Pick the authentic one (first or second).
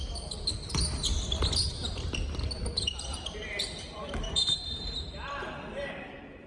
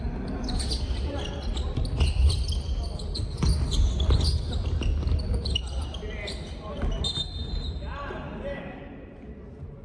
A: second